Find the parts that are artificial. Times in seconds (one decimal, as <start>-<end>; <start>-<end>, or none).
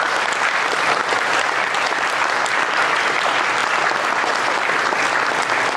none